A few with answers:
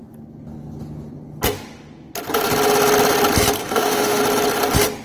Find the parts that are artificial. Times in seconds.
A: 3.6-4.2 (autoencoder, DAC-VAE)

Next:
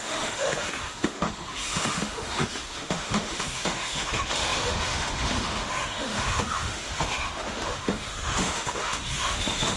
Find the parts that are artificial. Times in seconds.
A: 0.0-9.8 (autoencoder, DAC-VAE)

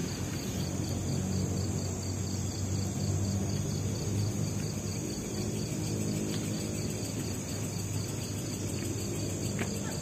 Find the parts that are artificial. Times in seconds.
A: none

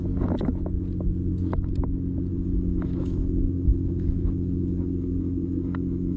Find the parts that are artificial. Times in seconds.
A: 2.3-6.2 (autoencoder, DAC-VAE)

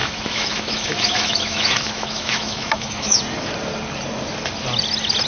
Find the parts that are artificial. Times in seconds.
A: 0.0-3.2 (autoencoder, DAC-VAE)